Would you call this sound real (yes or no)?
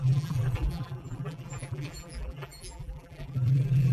no